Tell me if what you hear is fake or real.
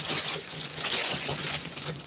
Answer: fake